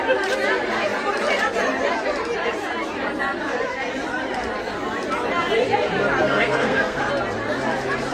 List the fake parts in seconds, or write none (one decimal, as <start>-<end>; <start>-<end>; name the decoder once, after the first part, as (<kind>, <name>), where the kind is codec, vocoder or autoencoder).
6.2-7.1 (codec, SNAC)

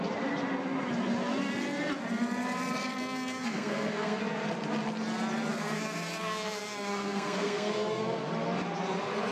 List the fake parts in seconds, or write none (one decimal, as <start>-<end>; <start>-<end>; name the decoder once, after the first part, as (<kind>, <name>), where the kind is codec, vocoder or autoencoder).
3.0-4.2 (codec, SNAC); 5.5-8.0

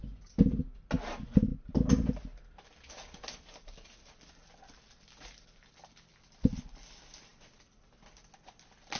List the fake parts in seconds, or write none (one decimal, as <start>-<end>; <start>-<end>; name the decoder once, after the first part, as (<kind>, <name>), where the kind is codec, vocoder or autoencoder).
none